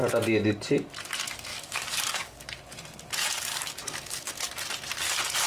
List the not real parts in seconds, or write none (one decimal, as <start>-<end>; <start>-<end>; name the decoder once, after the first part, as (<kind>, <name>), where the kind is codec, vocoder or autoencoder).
1.5-2.4 (codec, DAC); 3.5-4.3